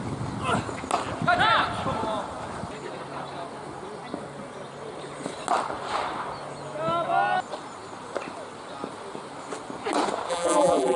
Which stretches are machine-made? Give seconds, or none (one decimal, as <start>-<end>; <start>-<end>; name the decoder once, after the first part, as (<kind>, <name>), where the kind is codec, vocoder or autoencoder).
10.3-11.0 (vocoder, BigVGAN v2)